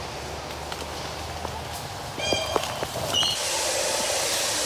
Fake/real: real